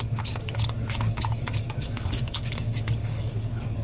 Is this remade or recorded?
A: remade